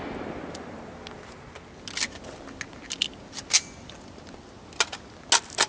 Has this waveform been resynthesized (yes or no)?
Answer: no